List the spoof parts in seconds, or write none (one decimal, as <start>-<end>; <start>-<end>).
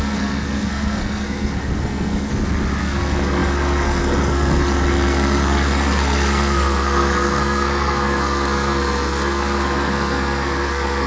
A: 0.0-2.3; 2.8-11.1